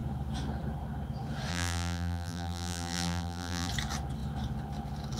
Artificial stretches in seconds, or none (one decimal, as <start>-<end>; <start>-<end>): 1.5-3.7